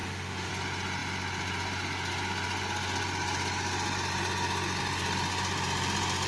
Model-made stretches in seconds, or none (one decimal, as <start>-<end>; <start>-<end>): 0.0-0.5